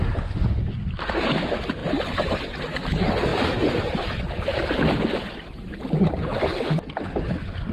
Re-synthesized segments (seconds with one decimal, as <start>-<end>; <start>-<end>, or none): 3.3-6.0